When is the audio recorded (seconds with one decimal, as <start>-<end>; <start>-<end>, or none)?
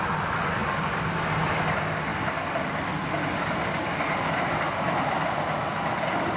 0.0-6.4